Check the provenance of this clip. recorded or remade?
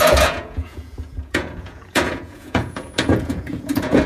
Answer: remade